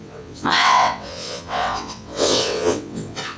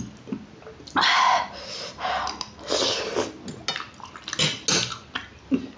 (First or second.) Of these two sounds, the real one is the second